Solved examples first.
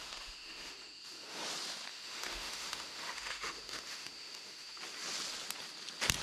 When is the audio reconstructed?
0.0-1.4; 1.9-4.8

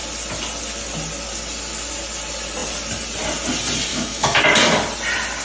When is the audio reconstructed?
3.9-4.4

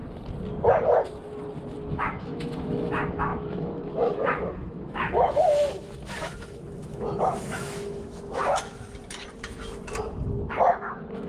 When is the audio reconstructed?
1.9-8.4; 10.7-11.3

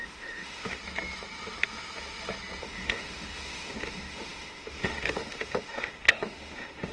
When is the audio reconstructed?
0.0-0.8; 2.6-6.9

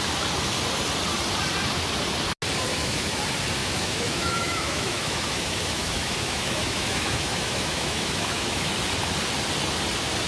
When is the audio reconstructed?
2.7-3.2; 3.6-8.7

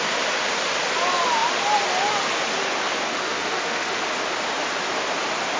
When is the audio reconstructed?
3.1-4.0

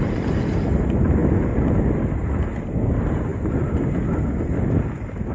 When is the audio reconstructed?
none